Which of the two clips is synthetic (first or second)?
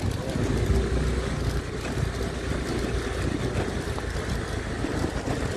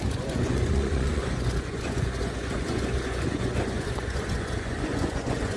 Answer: second